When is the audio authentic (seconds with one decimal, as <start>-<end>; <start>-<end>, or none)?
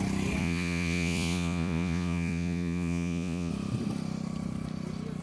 0.0-0.4; 3.5-5.2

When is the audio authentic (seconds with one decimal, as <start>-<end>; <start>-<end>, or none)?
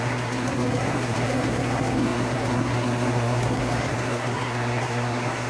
none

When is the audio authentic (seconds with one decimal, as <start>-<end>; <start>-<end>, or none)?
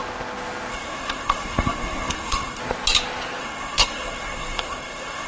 0.0-0.7; 2.6-3.4